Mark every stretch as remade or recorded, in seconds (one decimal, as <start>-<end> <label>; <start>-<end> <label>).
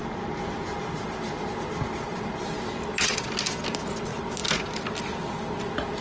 0.0-6.0 recorded